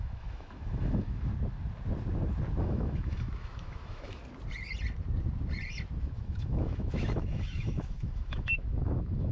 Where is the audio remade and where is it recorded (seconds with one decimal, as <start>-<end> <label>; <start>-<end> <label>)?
0.0-1.3 remade; 1.3-2.6 recorded; 2.6-4.2 remade; 4.2-6.0 recorded; 6.0-9.3 remade